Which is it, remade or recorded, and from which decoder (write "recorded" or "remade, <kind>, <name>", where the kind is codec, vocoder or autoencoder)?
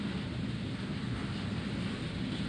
recorded